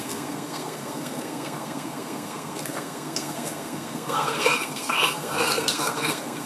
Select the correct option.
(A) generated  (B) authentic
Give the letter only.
A